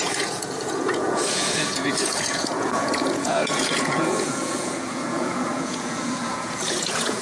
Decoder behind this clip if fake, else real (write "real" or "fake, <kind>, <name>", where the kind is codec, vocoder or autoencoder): fake, vocoder, Vocos